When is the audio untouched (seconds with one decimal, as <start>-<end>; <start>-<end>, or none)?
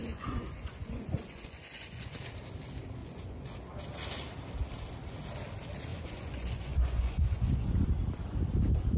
2.2-3.0; 3.5-5.9; 7.9-9.0